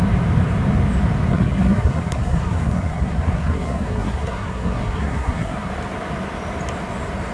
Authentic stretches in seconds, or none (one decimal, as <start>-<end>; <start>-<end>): 0.0-1.3; 5.7-7.3